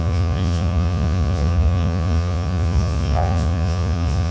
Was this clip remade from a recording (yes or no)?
yes